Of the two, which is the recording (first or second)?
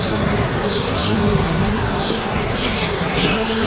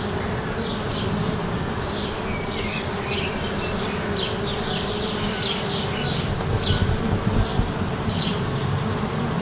second